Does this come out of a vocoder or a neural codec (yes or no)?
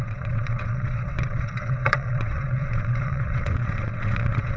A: yes